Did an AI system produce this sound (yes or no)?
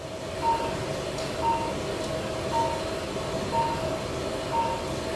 no